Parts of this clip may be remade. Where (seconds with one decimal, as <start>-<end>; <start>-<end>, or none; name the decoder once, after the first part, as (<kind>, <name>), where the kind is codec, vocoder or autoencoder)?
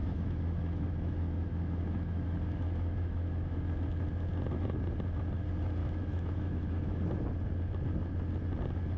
0.0-3.6 (autoencoder, DAC-VAE); 5.8-7.0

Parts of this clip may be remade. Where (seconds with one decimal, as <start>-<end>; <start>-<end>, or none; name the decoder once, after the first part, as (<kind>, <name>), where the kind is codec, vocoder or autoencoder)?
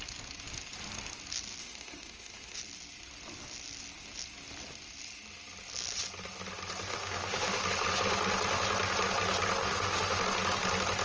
1.6-2.6 (autoencoder, DAC-VAE); 6.9-7.6; 9.6-10.2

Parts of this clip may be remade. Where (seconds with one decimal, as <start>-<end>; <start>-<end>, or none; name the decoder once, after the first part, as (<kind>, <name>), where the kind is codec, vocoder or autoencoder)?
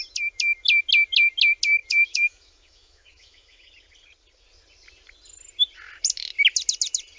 1.8-3.7 (autoencoder, DAC-VAE)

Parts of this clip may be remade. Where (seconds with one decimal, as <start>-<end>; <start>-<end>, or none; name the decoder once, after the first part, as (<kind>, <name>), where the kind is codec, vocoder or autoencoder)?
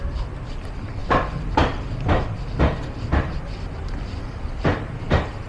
none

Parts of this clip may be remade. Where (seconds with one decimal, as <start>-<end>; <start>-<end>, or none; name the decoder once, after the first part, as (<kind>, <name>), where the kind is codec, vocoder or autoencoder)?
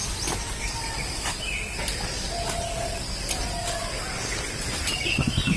none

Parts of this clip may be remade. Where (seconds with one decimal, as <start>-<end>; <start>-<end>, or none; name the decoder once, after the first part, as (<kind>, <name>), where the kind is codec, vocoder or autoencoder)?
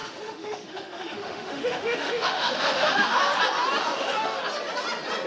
0.0-3.2 (autoencoder, DAC-VAE); 3.8-4.4